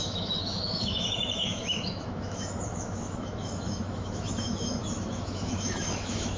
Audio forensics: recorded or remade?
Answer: remade